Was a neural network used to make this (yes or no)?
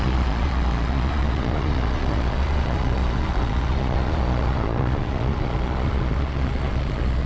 yes